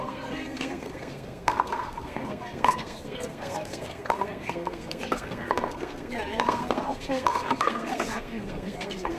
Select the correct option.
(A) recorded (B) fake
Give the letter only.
B